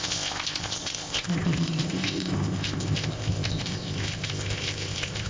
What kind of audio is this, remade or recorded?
remade